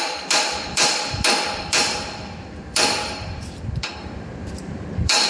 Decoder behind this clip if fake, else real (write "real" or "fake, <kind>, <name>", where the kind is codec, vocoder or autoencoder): fake, vocoder, BigVGAN v2